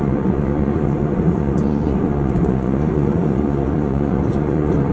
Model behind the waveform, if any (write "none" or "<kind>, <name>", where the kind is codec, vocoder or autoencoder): vocoder, Vocos